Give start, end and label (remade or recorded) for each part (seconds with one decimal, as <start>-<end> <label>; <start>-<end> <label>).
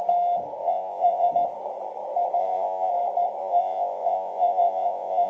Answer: 0.0-0.6 recorded; 0.6-1.3 remade; 1.3-2.4 recorded; 2.4-2.9 remade; 2.9-3.4 recorded; 3.4-5.3 remade